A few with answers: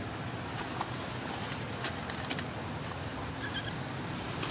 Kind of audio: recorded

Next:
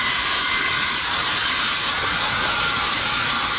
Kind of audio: recorded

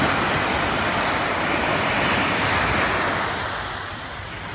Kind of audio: recorded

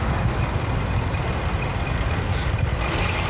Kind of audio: recorded